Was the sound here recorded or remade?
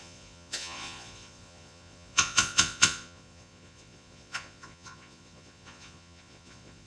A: remade